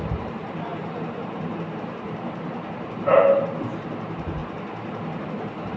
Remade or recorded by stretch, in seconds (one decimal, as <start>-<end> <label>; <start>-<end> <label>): 0.0-4.4 remade; 4.4-5.2 recorded; 5.2-5.8 remade

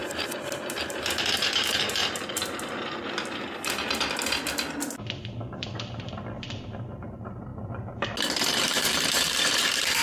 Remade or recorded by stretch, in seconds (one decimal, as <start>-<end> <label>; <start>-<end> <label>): 0.0-0.8 recorded; 0.8-2.0 remade; 2.0-6.8 recorded; 6.8-7.5 remade; 7.5-8.3 recorded; 8.3-10.0 remade

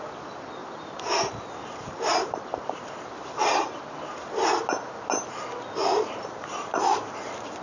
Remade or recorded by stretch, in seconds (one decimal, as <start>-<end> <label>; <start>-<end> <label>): 0.0-0.6 recorded; 0.6-3.9 remade; 3.9-5.8 recorded; 5.8-7.6 remade